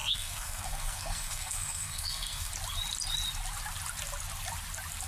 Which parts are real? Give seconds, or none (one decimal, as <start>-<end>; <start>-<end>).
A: 2.5-5.1